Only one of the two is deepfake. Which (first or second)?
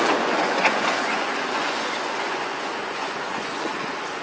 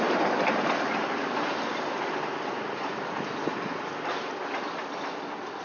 first